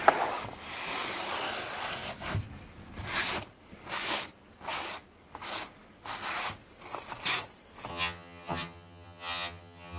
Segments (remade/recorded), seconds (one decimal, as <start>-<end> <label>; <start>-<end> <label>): 0.0-7.9 recorded; 7.9-10.0 remade